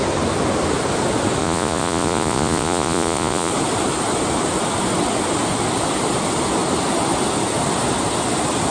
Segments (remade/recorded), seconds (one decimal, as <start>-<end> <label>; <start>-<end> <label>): 0.0-1.4 recorded; 1.4-3.5 remade; 3.5-8.7 recorded